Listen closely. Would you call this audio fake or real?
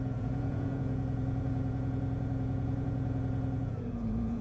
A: fake